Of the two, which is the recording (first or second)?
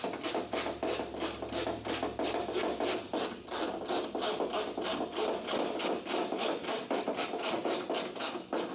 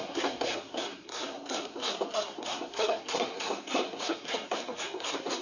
first